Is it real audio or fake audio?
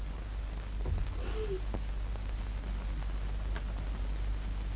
real